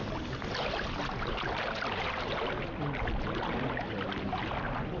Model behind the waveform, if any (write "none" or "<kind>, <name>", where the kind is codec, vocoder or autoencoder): none